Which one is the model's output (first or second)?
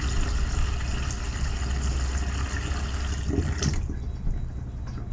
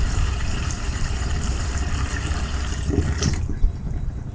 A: second